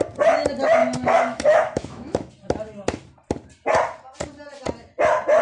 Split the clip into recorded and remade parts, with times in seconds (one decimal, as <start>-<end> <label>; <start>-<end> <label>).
0.0-0.8 recorded; 0.8-2.3 remade; 2.3-5.4 recorded